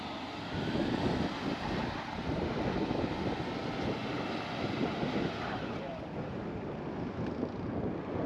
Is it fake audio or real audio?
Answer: real